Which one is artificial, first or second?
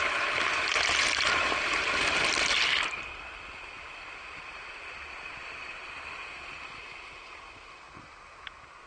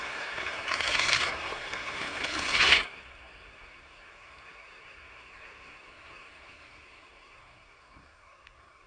second